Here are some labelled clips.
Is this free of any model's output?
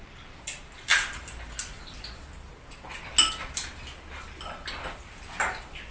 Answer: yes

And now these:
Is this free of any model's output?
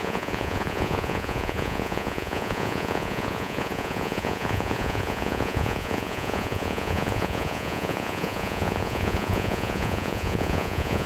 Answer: no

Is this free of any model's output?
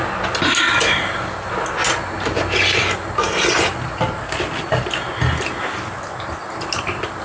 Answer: yes